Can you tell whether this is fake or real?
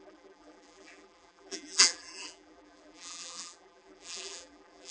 fake